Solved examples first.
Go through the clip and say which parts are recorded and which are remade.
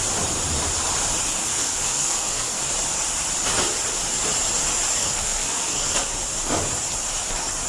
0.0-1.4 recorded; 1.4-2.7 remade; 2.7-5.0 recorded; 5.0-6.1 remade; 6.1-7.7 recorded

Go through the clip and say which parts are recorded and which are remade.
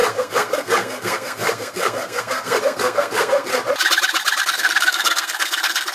0.0-3.5 remade; 3.5-4.4 recorded; 4.4-5.9 remade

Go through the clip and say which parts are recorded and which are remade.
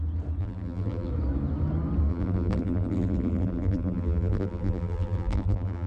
0.0-0.4 recorded; 0.4-1.1 remade; 1.1-2.1 recorded; 2.1-5.9 remade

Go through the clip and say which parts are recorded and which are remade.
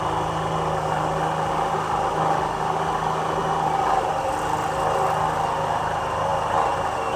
0.0-7.2 recorded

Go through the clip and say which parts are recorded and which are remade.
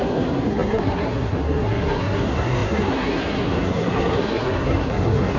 0.0-5.4 remade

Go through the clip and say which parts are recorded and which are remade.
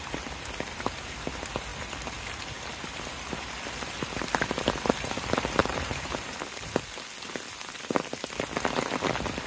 0.0-5.6 recorded; 5.6-6.3 remade; 6.3-9.5 recorded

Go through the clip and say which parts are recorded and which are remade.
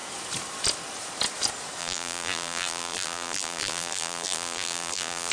0.0-1.8 recorded; 1.8-5.3 remade